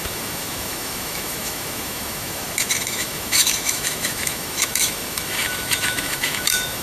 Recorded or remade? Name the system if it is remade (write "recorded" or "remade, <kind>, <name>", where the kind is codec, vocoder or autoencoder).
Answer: remade, autoencoder, DAC-VAE